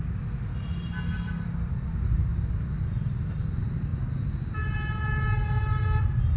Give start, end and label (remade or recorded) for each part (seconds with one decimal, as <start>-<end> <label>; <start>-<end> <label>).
0.0-6.4 recorded